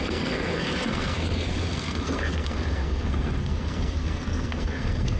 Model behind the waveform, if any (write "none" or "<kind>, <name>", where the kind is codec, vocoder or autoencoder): codec, SNAC